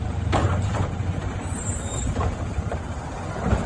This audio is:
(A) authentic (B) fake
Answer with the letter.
B